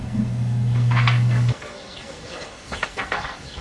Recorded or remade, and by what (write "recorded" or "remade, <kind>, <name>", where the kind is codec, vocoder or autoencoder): remade, codec, SNAC